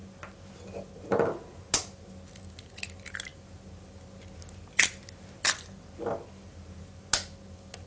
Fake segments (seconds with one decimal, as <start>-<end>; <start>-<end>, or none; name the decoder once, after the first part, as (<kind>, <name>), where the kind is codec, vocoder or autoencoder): none